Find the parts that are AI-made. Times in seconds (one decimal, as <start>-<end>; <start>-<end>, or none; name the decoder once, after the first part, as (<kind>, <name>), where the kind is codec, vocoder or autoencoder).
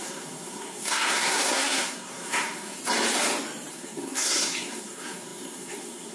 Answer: 0.0-2.8 (codec, SNAC); 3.7-6.1